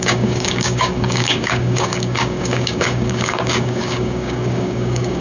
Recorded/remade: remade